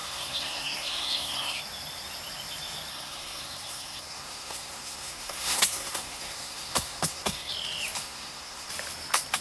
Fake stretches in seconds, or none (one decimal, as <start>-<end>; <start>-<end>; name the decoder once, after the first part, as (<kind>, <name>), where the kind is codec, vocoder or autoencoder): 0.0-1.6 (codec, SNAC); 2.9-7.5; 8.0-8.7